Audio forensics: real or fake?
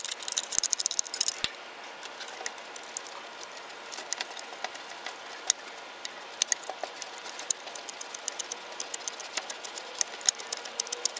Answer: real